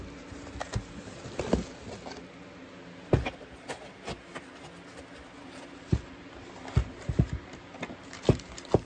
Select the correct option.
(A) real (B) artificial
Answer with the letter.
A